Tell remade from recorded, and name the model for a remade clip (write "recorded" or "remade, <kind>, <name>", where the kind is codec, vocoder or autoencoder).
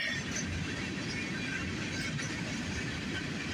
recorded